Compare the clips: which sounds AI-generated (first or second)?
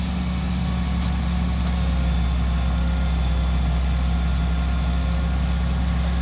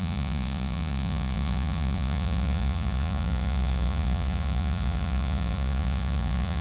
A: second